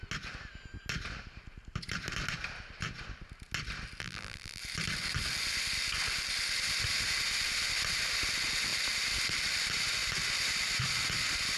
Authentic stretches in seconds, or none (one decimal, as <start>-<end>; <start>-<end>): 0.0-4.0; 4.6-11.6